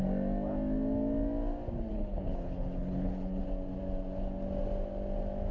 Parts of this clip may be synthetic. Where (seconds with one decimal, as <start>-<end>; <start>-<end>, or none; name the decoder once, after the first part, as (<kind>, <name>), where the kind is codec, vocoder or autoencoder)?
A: 1.9-3.4 (codec, HILCodec)